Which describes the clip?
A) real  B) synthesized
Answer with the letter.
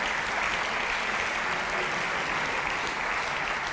A